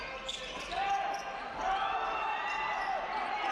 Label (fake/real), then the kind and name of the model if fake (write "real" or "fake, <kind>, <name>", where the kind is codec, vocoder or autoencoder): real